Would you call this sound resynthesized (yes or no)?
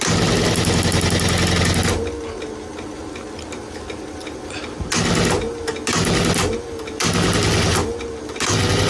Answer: no